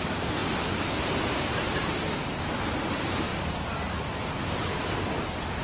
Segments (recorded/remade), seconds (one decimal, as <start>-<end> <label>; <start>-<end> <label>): 0.0-5.6 recorded